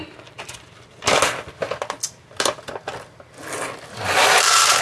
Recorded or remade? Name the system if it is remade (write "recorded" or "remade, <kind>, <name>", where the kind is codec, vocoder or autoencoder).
recorded